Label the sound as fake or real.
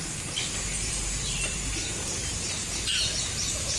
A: fake